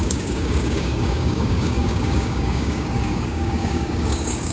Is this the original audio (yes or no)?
no